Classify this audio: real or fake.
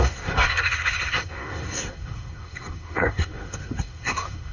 fake